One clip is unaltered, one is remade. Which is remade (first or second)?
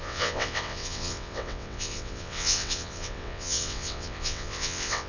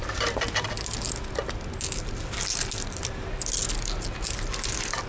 first